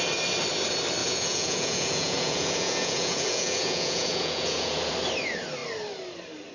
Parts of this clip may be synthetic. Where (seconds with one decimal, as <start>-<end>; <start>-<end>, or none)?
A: 1.0-4.9